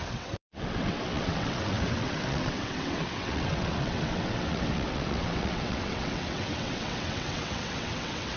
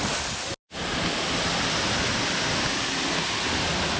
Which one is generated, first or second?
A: first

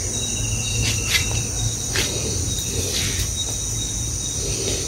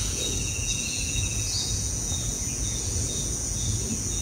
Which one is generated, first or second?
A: second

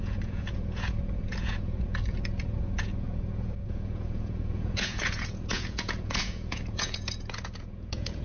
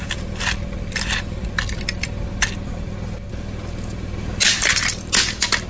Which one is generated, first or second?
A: first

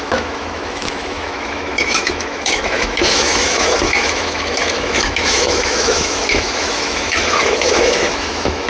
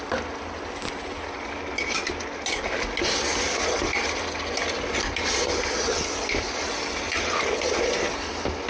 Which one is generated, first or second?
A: first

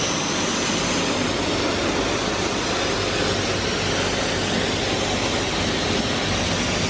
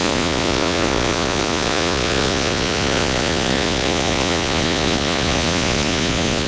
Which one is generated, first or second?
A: second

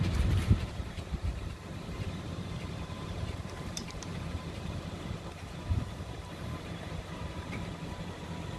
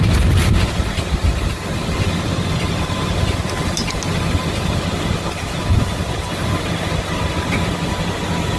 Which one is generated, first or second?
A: first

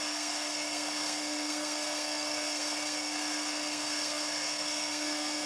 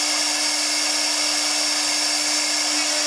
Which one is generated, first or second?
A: first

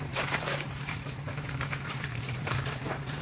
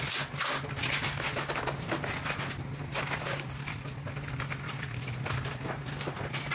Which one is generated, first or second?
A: first